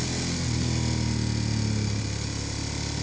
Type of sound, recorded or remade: recorded